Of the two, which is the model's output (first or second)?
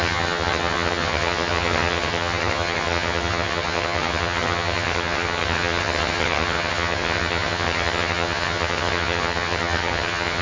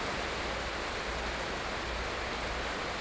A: first